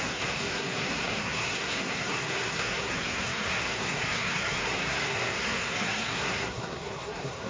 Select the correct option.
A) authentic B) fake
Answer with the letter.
B